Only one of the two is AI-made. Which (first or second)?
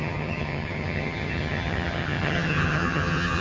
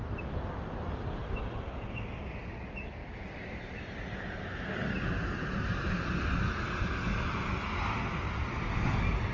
first